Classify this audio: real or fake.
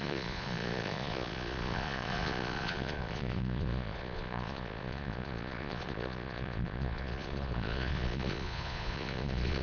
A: fake